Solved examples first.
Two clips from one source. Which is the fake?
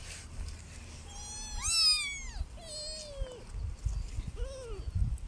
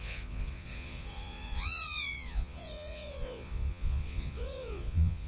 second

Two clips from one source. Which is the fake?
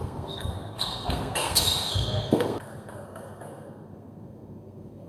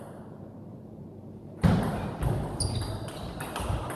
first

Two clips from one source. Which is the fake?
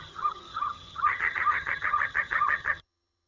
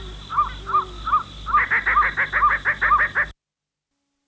first